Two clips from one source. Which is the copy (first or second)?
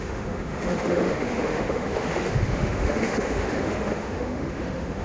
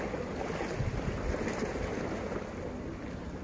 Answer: first